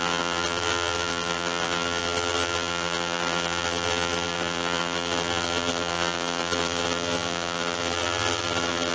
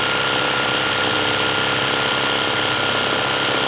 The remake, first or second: first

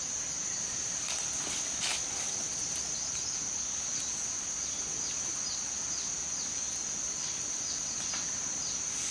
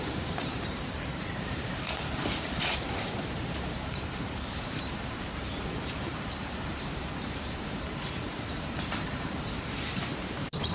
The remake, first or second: second